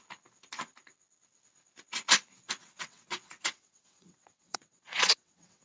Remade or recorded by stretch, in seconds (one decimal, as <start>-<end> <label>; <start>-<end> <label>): 0.0-2.6 recorded; 2.6-5.6 remade